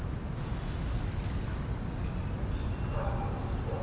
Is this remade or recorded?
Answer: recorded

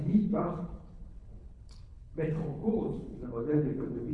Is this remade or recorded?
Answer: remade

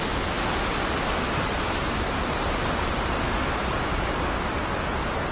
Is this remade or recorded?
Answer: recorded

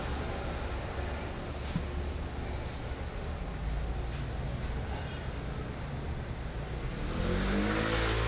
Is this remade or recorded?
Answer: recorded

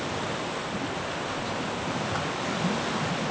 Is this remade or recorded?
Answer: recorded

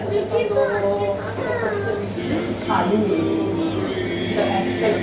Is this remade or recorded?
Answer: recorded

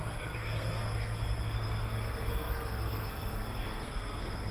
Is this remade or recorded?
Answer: remade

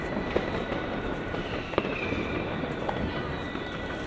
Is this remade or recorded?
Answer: recorded